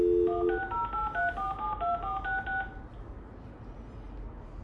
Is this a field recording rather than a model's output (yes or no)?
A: yes